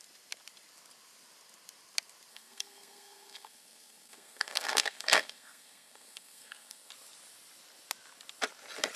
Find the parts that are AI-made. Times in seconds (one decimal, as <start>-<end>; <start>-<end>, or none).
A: 2.3-6.9